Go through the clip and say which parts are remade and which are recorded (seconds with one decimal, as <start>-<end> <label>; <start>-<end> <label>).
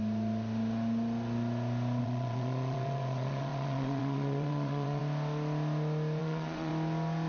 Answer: 0.0-2.0 recorded; 2.0-5.0 remade; 5.0-6.2 recorded; 6.2-6.7 remade; 6.7-7.3 recorded